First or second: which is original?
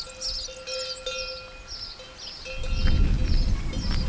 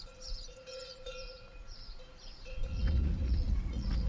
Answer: first